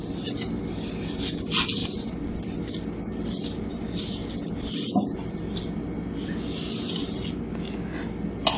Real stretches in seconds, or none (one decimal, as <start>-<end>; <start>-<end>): 0.0-8.6